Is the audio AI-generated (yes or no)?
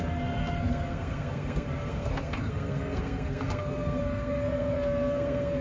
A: yes